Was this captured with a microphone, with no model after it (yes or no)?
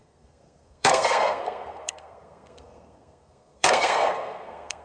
no